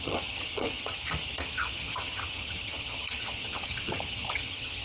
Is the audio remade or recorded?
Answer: remade